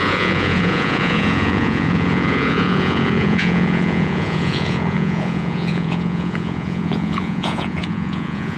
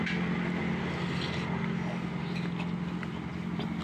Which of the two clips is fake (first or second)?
first